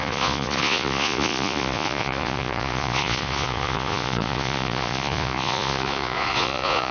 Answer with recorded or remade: remade